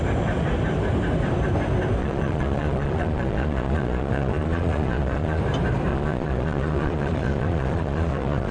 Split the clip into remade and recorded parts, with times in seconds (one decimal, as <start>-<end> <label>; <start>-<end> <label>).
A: 0.0-2.0 recorded; 2.0-5.4 remade; 5.4-5.9 recorded; 5.9-8.5 remade